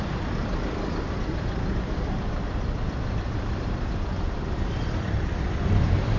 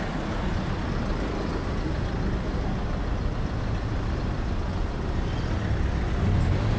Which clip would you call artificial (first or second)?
first